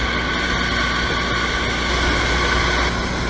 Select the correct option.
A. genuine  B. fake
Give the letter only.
A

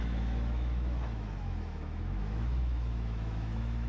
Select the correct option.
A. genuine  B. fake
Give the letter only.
B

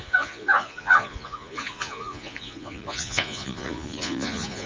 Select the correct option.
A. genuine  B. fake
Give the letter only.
B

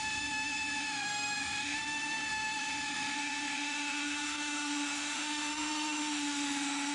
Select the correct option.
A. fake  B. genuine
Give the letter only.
A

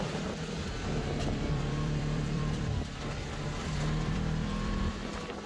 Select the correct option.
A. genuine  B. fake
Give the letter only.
B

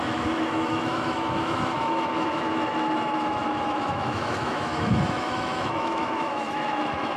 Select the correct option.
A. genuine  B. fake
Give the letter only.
B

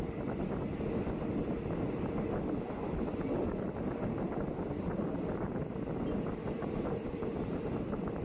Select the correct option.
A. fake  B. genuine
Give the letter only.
B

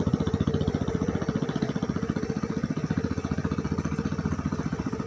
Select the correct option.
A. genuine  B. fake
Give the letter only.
A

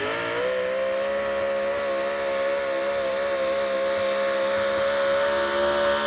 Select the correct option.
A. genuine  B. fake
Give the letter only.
A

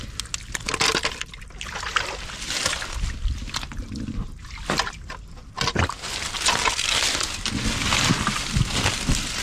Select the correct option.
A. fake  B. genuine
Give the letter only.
B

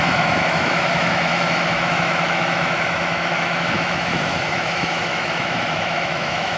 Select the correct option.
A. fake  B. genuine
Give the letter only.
A